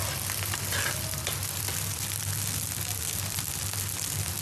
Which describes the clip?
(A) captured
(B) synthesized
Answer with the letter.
A